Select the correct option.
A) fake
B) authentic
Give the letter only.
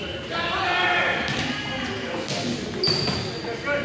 B